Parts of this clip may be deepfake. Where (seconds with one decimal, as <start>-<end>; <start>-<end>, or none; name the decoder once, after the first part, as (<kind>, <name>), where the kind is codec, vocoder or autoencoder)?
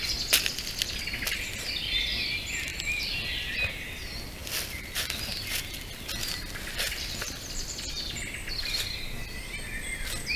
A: 2.7-3.5 (vocoder, BigVGAN v2); 4.4-7.7